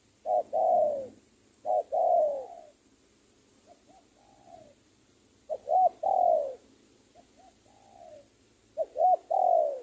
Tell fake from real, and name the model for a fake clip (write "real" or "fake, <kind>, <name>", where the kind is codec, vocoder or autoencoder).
real